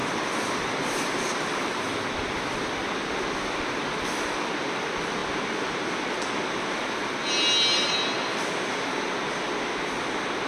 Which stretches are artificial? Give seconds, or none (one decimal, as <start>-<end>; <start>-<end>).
0.0-1.4; 2.2-2.7